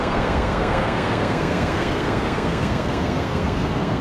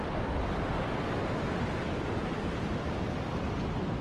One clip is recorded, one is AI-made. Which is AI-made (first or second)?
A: first